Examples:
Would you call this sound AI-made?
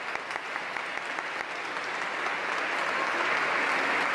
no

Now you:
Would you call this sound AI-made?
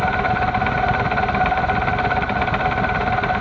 no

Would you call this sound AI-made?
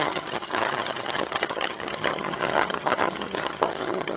yes